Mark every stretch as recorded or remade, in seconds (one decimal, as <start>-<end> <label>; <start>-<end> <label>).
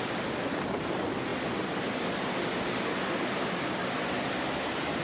0.0-5.0 recorded